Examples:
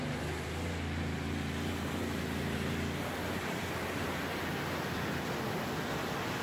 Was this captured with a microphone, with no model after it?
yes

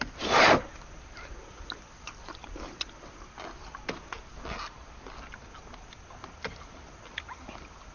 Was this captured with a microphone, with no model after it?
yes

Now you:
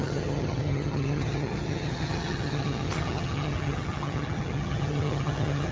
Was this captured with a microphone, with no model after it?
no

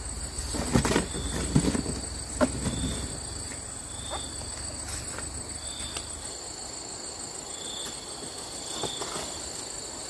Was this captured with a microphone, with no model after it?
yes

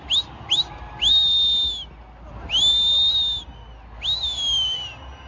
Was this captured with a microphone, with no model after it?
yes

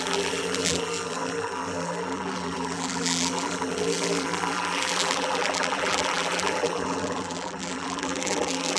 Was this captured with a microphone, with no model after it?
no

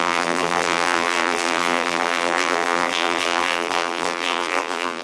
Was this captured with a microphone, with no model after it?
no